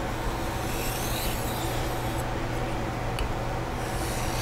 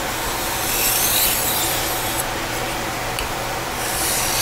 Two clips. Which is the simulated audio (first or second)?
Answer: second